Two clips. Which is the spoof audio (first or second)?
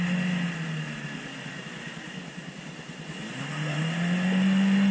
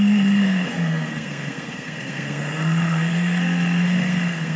second